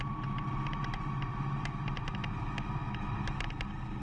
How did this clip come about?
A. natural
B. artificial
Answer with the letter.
A